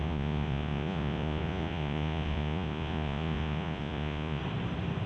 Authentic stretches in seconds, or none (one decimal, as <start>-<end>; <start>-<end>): 4.4-5.1